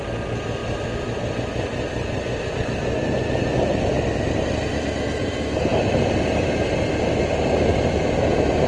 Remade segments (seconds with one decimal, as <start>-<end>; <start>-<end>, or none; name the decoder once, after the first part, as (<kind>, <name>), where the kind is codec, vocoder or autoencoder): 5.2-5.7 (vocoder, BigVGAN v2)